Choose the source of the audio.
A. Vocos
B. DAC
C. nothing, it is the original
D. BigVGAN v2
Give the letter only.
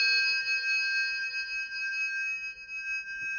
C